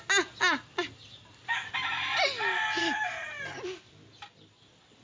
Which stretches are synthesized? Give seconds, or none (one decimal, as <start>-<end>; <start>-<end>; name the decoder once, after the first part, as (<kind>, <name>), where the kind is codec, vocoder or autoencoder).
none